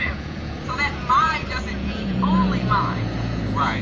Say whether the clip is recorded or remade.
remade